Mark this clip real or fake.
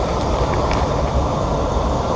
real